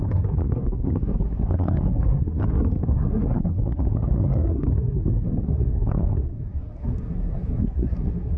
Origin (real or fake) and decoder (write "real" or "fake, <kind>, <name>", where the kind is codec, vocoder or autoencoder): fake, codec, SNAC